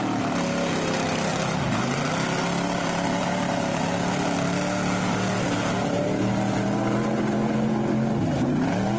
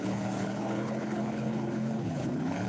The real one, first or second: first